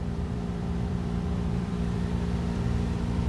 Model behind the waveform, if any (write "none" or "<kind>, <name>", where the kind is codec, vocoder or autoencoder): vocoder, BigVGAN v2